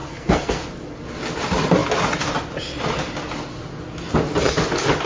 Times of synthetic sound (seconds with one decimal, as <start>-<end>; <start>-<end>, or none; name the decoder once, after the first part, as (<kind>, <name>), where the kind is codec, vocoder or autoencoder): 0.0-0.6 (codec, SNAC)